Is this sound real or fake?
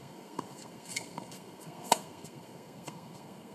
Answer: fake